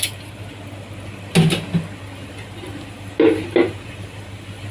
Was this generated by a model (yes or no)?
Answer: no